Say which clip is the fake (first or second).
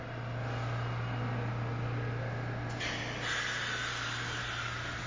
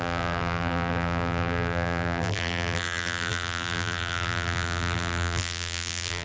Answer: second